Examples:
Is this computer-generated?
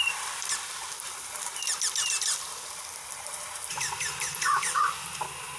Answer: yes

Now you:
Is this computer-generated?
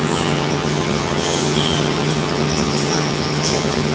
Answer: yes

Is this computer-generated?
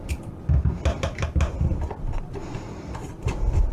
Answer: no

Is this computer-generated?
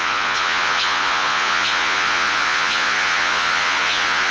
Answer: yes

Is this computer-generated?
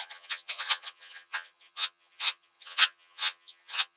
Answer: yes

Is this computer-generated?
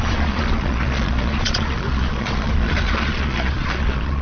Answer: yes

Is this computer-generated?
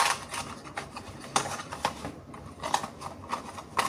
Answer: no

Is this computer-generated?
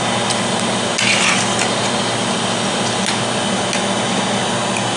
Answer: no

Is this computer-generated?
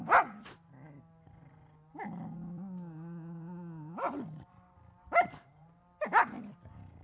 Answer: no